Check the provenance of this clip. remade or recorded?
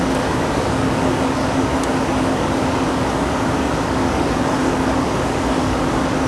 remade